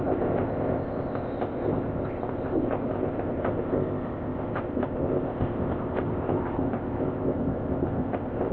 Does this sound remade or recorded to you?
remade